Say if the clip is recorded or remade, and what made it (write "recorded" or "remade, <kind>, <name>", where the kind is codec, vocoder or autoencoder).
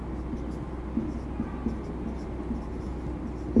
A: recorded